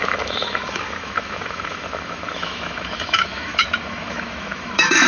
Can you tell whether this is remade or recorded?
remade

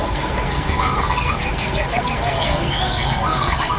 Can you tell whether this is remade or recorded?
remade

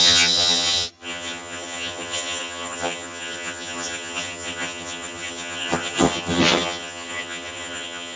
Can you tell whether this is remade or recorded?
remade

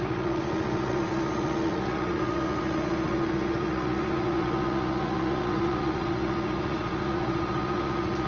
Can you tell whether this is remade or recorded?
remade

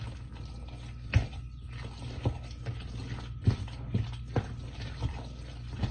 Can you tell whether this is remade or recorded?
recorded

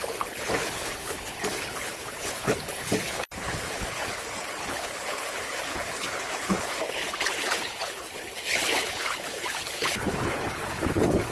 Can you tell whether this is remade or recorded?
remade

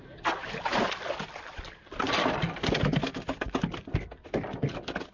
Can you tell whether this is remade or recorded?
recorded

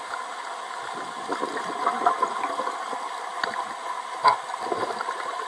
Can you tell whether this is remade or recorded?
recorded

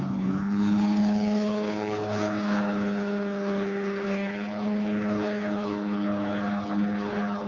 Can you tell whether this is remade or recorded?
remade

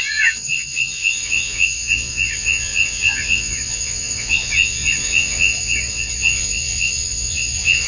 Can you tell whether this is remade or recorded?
remade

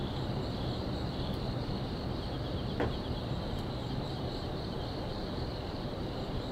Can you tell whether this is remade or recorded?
remade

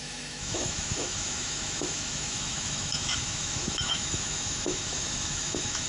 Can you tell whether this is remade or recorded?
remade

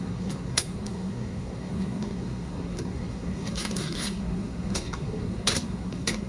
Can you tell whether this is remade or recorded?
remade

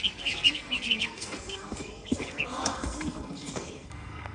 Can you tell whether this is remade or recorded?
remade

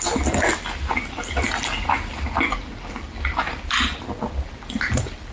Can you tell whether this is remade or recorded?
recorded